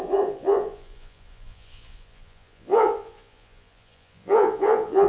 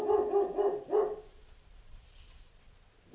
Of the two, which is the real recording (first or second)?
second